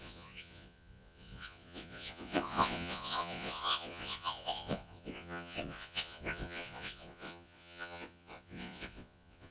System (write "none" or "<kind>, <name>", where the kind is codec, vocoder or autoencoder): vocoder, Vocos